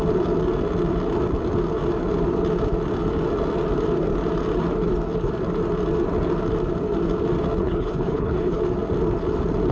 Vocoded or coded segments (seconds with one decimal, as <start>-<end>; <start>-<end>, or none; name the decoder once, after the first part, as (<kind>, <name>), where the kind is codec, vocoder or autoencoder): 7.6-8.6 (codec, HILCodec)